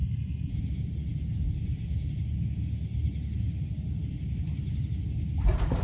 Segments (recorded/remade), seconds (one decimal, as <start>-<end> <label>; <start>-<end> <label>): 0.0-0.5 remade; 0.5-5.8 recorded